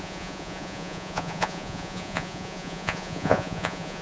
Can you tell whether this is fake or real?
fake